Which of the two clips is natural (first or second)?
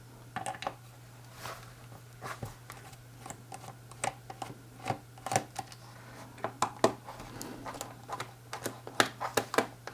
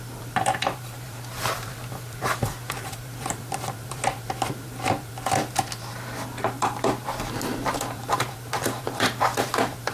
first